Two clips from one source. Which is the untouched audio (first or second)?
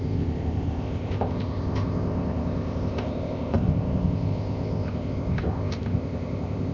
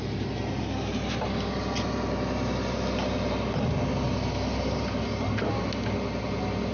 second